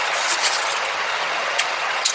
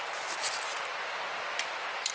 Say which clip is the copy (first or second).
first